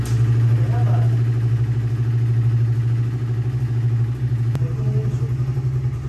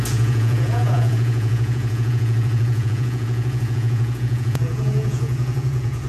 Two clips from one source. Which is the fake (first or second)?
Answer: second